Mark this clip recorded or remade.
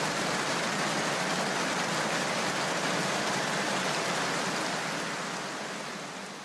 recorded